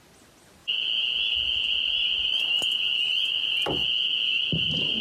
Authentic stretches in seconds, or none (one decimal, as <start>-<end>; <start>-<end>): 0.0-0.6; 1.8-3.8; 4.4-5.0

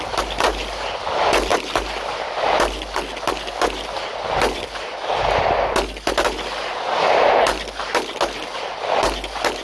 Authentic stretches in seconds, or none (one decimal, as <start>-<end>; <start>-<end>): 0.0-9.6

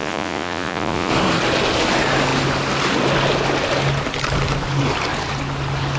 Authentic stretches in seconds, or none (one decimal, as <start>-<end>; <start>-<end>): 1.1-6.0